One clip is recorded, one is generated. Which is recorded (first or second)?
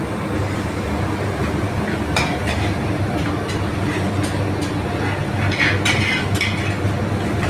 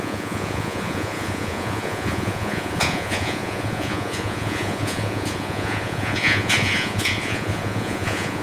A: first